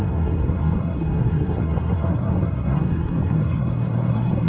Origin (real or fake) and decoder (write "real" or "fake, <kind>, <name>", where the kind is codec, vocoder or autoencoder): fake, codec, SNAC